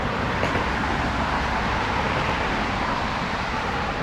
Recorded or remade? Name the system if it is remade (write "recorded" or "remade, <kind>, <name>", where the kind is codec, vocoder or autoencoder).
remade, vocoder, BigVGAN v2